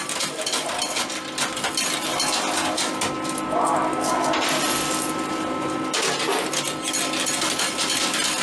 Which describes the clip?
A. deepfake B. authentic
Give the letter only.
B